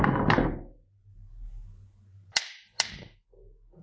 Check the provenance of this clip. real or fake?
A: real